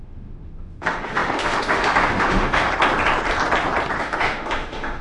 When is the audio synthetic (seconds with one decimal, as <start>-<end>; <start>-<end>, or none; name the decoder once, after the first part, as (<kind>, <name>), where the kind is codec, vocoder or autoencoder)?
0.0-2.7 (autoencoder, DAC-VAE); 4.0-5.0